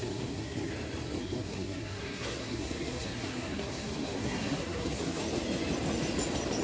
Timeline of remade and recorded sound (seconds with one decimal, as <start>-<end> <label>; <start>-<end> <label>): 0.0-0.7 remade; 0.7-1.2 recorded; 1.2-5.2 remade; 5.2-6.6 recorded